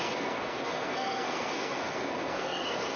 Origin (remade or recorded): remade